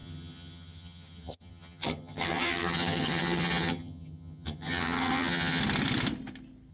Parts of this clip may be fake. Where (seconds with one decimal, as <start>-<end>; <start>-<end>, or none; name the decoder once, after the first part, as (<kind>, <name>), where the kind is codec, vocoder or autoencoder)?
0.0-5.6 (vocoder, HiFi-GAN)